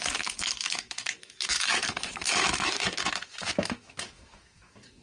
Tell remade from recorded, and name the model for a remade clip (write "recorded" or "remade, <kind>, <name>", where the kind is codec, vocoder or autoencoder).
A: remade, autoencoder, DAC-VAE